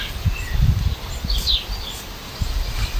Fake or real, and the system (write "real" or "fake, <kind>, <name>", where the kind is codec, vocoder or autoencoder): real